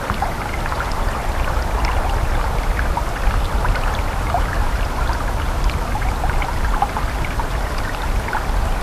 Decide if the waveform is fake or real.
real